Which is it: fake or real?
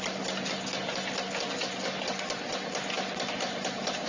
real